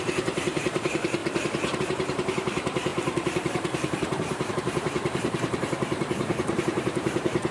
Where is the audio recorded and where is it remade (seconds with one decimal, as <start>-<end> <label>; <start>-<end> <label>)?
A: 0.0-1.2 remade; 1.2-1.8 recorded; 1.8-7.5 remade